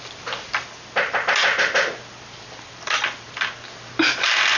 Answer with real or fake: real